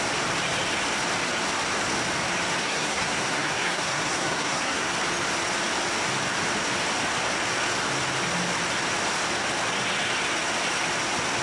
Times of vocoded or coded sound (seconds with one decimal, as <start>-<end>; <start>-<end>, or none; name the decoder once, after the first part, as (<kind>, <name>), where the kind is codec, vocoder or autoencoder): 2.6-4.9 (codec, SNAC)